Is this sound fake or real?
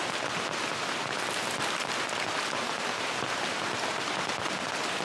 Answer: real